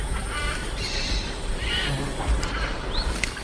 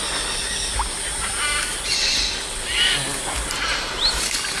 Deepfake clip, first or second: first